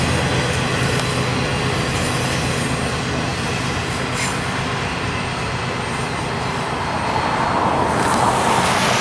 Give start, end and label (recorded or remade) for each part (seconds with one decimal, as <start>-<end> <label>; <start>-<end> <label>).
0.0-9.0 recorded